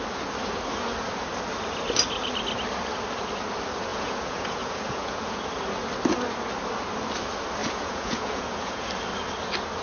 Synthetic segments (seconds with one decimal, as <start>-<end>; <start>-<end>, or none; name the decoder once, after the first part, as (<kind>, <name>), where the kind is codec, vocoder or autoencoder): 3.9-5.4 (vocoder, Vocos); 7.6-8.9